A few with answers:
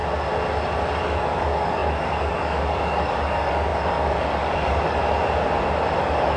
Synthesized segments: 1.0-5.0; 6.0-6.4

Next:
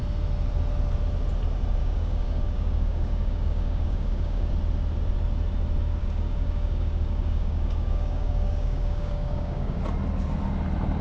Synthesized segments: 1.8-4.5; 6.0-9.8

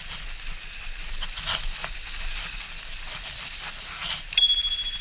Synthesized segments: none

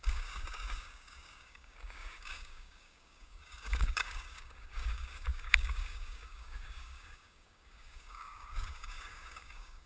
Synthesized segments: 0.0-9.9